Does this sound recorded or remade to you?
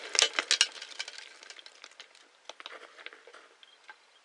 recorded